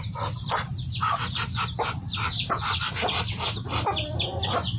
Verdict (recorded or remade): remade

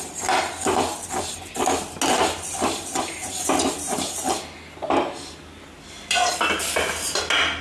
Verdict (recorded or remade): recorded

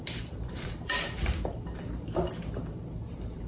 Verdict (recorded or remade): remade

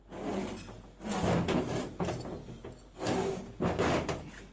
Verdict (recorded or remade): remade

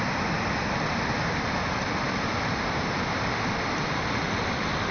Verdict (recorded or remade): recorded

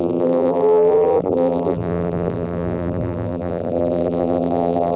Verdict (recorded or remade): remade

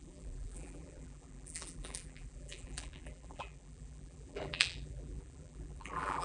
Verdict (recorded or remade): remade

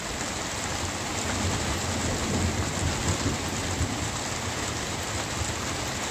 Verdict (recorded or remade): recorded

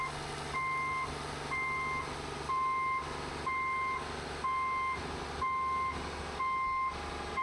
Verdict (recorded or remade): recorded